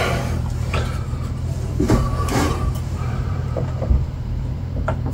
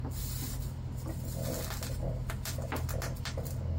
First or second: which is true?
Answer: second